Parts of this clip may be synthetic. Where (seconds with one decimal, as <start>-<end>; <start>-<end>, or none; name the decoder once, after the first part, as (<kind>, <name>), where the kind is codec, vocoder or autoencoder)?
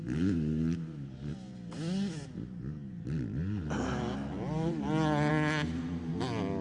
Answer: none